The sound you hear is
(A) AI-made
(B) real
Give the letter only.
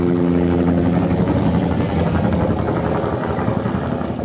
B